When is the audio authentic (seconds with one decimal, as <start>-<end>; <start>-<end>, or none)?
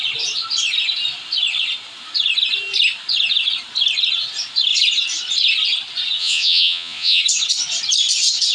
0.0-6.2; 7.2-8.5